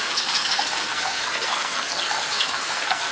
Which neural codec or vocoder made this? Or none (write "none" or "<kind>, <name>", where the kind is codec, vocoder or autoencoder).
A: codec, SNAC